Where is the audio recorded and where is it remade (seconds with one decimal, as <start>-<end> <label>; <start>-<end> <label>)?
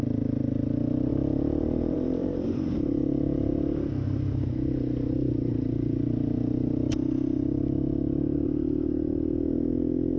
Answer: 0.0-1.1 recorded; 1.1-3.5 remade; 3.5-10.2 recorded